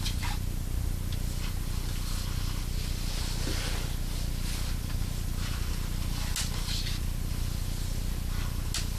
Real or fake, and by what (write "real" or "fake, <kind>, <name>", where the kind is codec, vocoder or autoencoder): real